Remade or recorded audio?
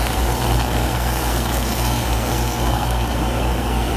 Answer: remade